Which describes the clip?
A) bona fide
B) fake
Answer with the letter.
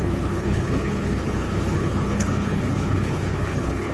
B